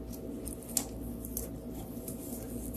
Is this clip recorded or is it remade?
recorded